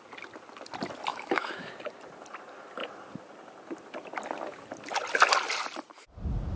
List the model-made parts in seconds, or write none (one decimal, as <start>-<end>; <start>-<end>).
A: 1.1-1.7

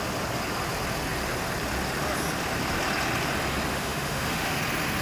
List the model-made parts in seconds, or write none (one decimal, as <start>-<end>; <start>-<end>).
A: 3.7-4.6

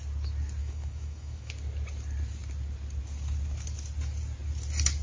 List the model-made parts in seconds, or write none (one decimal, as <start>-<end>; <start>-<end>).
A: 0.6-1.5

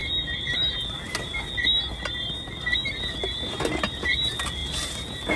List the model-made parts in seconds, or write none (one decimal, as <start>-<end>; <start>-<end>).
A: none

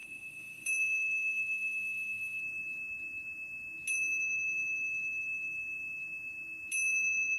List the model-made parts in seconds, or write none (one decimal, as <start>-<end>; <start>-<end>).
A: 0.0-2.4

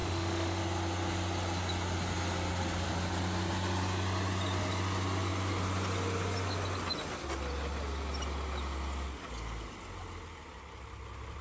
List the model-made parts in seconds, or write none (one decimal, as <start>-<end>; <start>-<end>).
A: 0.0-0.6

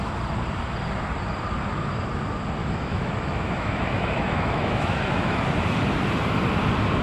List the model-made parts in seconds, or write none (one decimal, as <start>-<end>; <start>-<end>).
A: 2.6-5.4

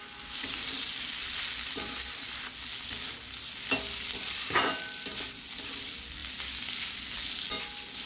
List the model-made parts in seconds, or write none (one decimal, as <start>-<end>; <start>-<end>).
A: none